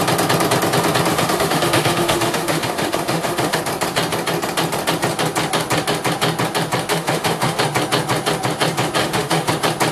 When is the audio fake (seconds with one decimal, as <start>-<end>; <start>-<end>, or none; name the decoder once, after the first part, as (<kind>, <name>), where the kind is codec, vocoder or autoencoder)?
1.1-3.6 (autoencoder, DAC-VAE); 6.9-7.6; 9.0-9.5